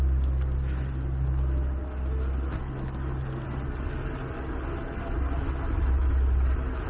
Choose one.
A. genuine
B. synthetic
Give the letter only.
A